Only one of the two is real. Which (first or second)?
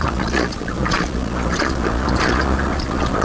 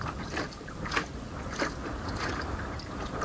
second